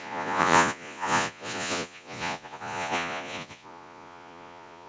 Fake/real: fake